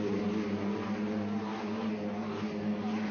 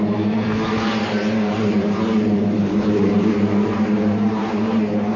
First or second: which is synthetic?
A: second